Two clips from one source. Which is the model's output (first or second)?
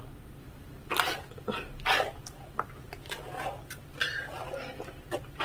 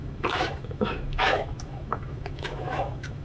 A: second